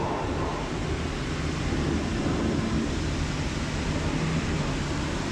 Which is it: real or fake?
real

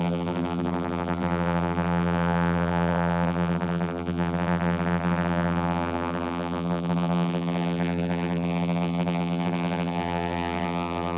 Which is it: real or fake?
fake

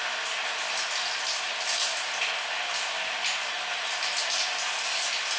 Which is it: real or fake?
real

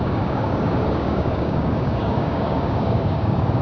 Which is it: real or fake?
fake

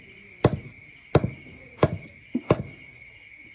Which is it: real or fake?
real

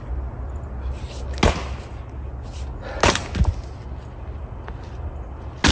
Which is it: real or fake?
real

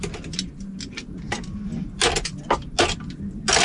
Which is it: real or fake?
real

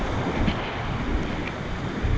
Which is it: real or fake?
real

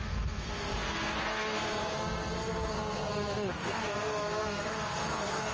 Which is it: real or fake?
fake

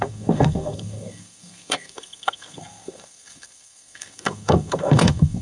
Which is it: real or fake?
fake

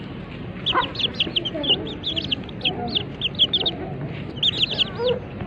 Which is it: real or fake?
real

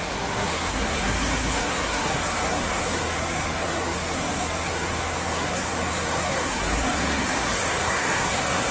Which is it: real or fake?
fake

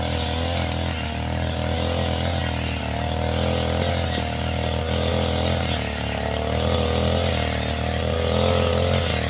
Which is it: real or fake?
real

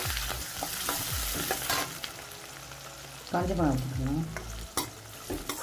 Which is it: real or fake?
real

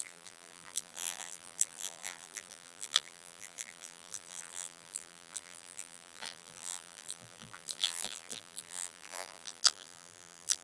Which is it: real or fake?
fake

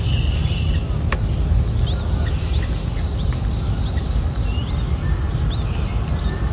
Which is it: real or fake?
real